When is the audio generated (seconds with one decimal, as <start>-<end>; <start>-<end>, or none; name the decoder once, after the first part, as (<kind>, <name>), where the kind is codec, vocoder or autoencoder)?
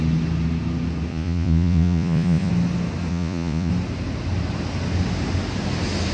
1.1-2.5 (vocoder, Vocos); 3.1-3.7